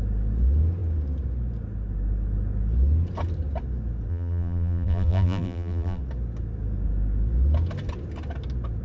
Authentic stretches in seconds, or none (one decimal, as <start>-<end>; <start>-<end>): 0.0-4.1; 6.0-8.8